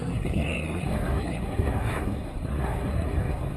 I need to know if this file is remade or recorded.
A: remade